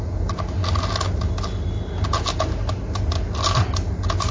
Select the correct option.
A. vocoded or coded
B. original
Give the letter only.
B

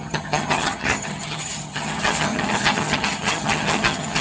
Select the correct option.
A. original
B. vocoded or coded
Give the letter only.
B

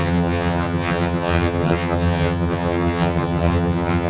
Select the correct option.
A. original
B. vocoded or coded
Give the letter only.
B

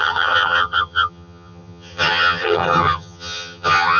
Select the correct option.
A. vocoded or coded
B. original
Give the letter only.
A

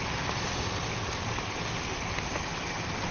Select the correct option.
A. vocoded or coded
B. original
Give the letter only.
B